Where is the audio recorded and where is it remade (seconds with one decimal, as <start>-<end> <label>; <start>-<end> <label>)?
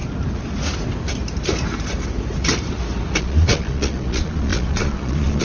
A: 0.0-3.2 recorded; 3.2-5.4 remade